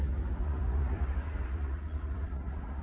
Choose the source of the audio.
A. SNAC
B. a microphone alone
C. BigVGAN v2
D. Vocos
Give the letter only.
D